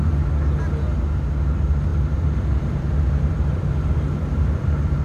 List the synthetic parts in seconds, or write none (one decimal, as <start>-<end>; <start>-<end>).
1.9-5.0